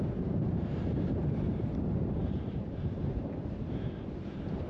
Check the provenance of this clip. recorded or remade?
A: remade